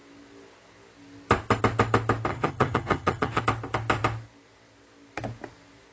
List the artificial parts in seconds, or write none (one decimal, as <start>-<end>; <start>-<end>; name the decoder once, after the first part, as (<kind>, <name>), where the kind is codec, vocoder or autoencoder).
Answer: 2.3-3.4 (vocoder, HiFi-GAN)